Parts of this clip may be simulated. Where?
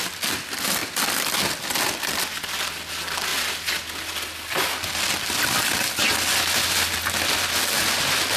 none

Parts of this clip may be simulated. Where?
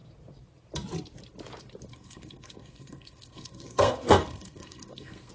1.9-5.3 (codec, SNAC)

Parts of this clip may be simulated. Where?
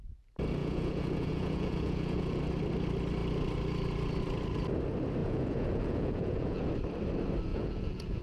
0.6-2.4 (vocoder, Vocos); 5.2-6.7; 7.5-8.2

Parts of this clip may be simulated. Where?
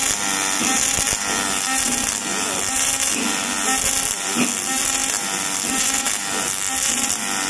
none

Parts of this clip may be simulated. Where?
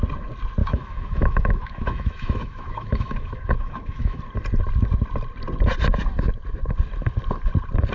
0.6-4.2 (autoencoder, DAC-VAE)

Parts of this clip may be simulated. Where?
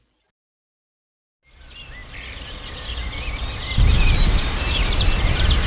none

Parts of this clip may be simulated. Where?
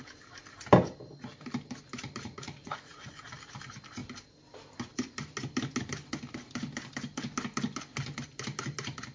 2.0-3.1 (vocoder, Vocos)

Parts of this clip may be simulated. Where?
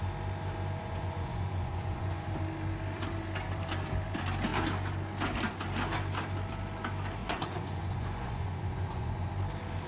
0.8-2.3 (vocoder, Vocos); 7.2-9.3